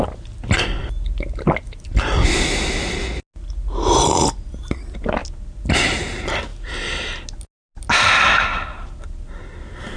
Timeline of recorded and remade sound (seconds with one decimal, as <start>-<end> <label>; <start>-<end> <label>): 0.0-10.0 recorded